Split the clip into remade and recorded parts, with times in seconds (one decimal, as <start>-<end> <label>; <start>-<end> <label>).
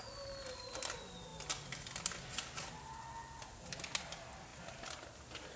0.0-5.6 recorded